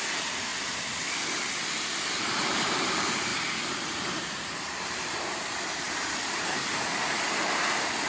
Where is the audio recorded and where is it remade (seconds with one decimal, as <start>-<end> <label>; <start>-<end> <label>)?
0.0-0.5 remade; 0.5-2.2 recorded; 2.2-8.1 remade